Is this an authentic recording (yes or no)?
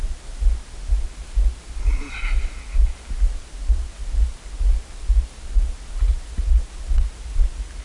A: yes